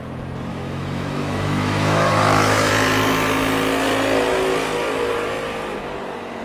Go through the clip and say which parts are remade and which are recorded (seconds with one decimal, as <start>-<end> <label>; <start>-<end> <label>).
0.0-0.5 recorded; 0.5-2.7 remade; 2.7-6.4 recorded